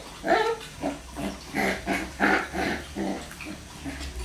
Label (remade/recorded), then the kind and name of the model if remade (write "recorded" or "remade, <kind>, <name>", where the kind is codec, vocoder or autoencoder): recorded